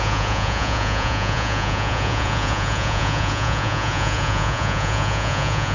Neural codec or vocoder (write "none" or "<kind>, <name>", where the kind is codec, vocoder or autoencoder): vocoder, Vocos